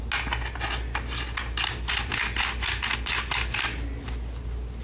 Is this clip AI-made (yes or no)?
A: no